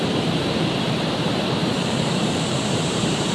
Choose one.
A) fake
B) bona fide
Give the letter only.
A